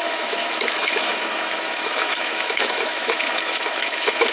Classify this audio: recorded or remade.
remade